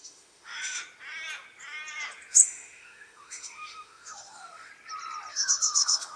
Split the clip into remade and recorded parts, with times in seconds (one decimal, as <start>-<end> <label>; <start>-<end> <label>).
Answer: 0.0-0.8 remade; 0.8-2.3 recorded; 2.3-4.7 remade; 4.7-5.3 recorded; 5.3-6.2 remade